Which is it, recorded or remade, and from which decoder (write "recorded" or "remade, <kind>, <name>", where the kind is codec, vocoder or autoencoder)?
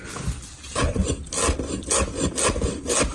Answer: recorded